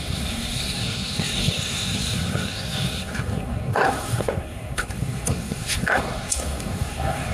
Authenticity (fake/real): fake